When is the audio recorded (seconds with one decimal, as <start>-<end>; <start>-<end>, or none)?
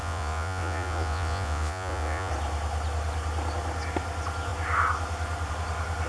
2.3-6.1